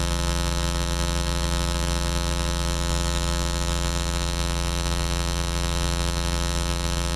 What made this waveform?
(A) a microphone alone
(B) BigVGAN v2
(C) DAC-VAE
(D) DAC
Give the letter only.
B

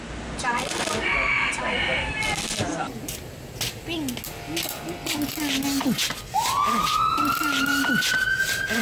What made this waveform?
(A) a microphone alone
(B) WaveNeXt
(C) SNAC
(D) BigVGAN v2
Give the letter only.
A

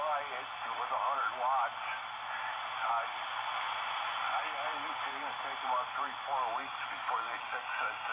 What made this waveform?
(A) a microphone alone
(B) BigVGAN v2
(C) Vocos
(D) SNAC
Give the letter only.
A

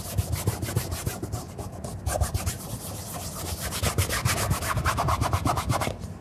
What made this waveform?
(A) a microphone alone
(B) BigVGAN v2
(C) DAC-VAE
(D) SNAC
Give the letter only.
A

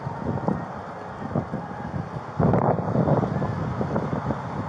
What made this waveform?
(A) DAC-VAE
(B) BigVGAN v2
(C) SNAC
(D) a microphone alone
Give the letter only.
D